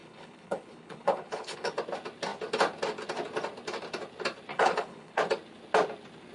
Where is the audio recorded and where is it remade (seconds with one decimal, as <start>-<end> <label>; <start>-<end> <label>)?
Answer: 0.0-1.7 remade; 1.7-4.5 recorded; 4.5-5.2 remade; 5.2-6.3 recorded